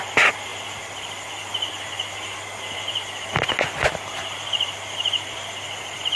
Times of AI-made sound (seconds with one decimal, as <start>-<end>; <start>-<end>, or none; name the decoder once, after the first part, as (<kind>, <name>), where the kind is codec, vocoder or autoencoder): none